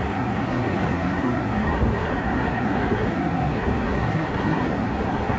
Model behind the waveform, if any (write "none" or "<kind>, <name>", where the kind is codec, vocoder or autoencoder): codec, SNAC